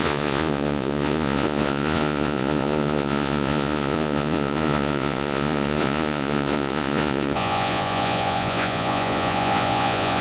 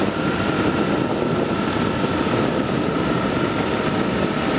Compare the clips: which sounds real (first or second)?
second